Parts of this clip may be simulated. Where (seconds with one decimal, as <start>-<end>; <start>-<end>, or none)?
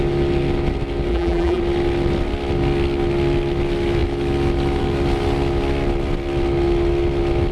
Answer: 1.1-1.6